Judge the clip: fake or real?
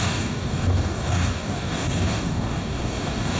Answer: fake